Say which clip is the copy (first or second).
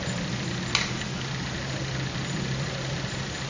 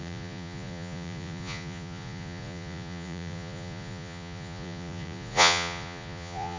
second